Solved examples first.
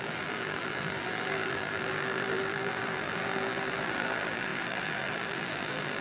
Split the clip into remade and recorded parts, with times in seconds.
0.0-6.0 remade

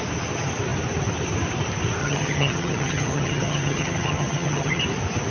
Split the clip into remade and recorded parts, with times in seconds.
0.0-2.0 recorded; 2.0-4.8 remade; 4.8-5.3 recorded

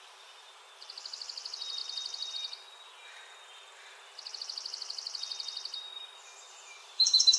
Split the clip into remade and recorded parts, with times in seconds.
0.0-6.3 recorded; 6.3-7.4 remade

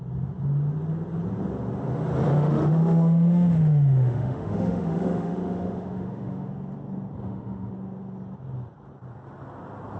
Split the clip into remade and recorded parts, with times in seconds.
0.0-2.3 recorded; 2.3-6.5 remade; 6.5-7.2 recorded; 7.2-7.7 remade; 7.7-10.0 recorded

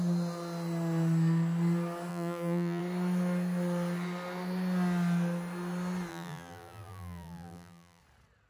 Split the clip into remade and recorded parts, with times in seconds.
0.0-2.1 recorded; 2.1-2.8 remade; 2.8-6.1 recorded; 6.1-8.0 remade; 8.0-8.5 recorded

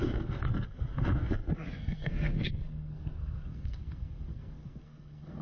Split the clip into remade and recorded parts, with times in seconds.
0.0-5.4 remade

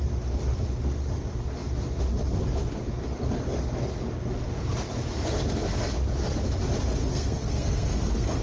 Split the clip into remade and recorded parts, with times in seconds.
0.0-7.1 recorded; 7.1-8.4 remade